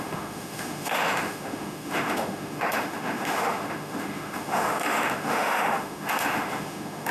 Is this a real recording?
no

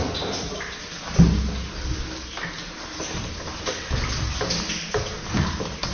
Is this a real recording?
yes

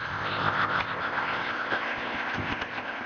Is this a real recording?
no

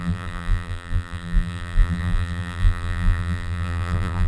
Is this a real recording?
no